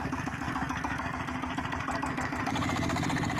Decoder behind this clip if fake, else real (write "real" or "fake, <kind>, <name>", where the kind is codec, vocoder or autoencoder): fake, codec, SNAC